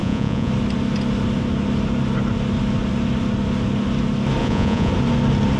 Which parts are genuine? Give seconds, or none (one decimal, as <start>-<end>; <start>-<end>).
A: 0.5-4.4; 4.9-5.6